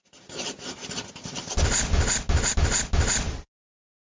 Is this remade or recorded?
recorded